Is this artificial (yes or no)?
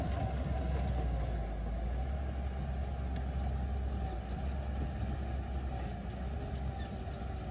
no